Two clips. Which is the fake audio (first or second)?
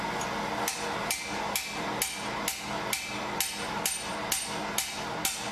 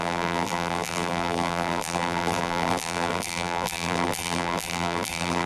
second